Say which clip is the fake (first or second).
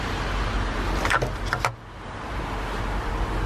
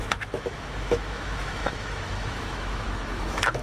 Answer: second